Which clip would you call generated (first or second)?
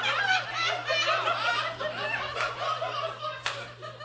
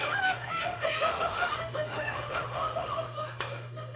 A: second